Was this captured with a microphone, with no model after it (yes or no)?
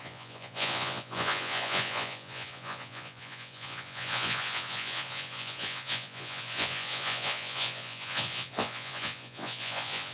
no